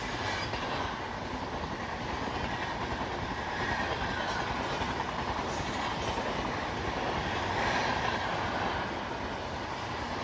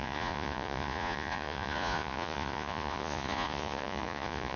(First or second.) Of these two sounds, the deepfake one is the second